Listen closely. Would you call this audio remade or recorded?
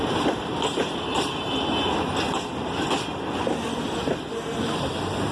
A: recorded